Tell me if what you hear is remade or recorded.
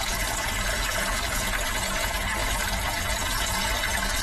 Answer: remade